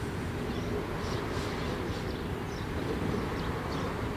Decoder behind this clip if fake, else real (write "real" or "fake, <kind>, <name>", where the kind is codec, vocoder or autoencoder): real